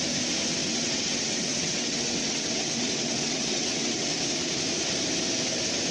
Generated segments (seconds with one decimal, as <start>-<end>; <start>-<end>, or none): 0.6-4.1